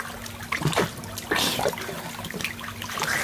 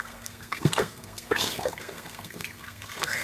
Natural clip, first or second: first